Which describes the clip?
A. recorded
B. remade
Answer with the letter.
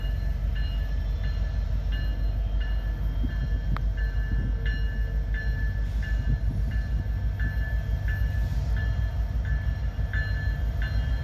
A